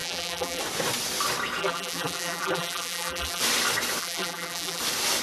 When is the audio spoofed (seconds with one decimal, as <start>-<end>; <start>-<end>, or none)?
0.0-0.6; 1.6-3.4; 4.0-4.8